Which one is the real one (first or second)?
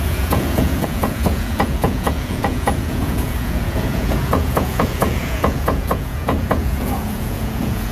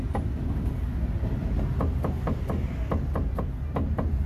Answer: second